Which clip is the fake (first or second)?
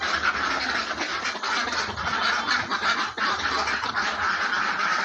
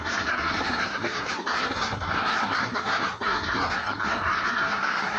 second